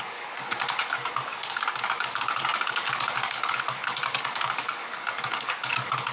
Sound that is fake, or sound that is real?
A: fake